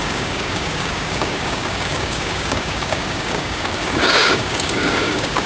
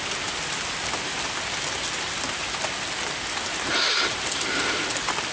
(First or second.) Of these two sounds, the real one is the second